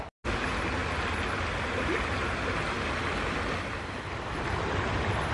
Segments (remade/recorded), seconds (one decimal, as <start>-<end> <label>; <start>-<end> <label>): 0.0-5.3 recorded